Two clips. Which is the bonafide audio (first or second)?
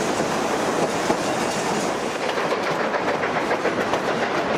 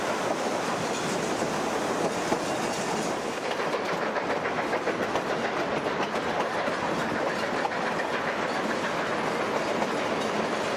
second